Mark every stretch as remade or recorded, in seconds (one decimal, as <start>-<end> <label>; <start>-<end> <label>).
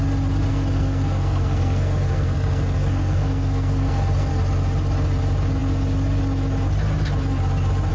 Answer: 0.0-0.5 recorded; 0.5-4.3 remade; 4.3-7.9 recorded